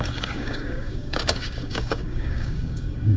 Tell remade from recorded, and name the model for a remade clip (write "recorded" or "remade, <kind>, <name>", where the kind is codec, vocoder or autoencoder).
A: remade, codec, DAC